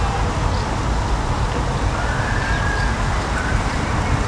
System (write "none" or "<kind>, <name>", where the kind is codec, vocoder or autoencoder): none